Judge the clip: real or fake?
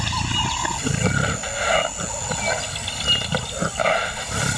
real